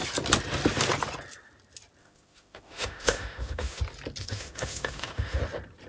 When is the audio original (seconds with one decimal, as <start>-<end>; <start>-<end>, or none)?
0.0-2.0; 3.8-4.2; 5.4-5.9